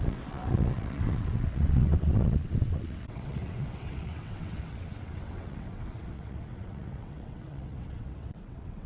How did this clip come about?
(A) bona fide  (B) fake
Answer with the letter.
B